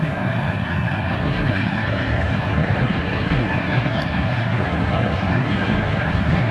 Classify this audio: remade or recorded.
remade